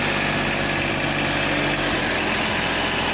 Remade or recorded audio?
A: recorded